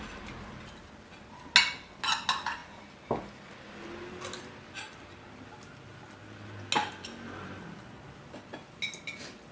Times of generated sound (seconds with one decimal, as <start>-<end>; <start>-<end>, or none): none